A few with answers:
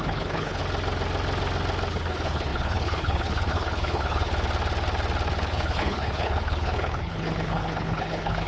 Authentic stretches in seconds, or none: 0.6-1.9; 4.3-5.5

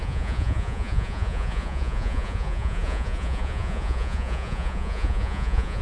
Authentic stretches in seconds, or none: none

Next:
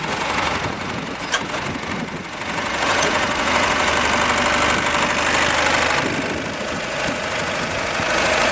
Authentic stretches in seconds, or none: 3.9-6.6